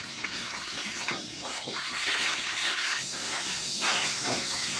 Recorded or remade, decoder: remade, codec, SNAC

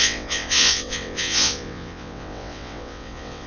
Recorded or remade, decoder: remade, vocoder, WaveNeXt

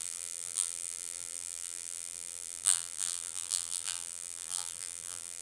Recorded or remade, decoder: remade, vocoder, BigVGAN v2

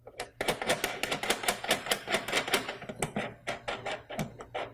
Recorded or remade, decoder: recorded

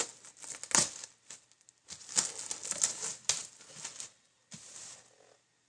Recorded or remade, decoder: recorded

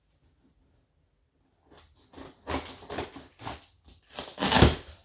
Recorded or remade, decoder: recorded